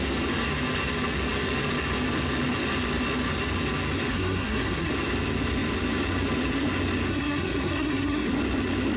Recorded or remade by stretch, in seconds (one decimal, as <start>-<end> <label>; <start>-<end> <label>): 0.0-4.1 recorded; 4.1-4.9 remade; 4.9-7.1 recorded; 7.1-8.3 remade; 8.3-9.0 recorded